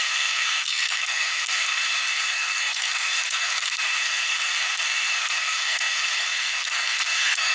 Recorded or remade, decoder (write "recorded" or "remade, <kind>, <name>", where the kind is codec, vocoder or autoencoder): remade, codec, SNAC